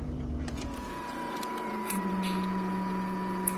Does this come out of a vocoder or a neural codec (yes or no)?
yes